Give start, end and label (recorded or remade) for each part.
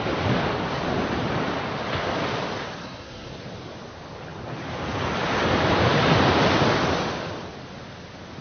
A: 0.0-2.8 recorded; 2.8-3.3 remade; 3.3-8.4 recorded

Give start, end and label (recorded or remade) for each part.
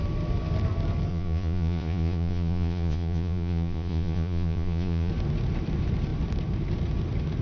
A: 0.0-1.1 recorded; 1.1-5.1 remade; 5.1-7.4 recorded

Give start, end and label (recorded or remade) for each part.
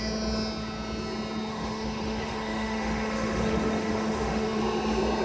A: 0.0-1.5 recorded; 1.5-4.6 remade; 4.6-5.2 recorded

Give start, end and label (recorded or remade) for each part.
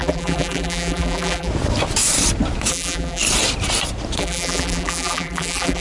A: 0.0-1.5 remade; 1.5-2.7 recorded; 2.7-3.2 remade; 3.2-4.2 recorded; 4.2-5.8 remade